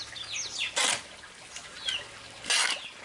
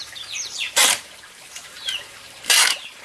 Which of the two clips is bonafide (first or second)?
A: first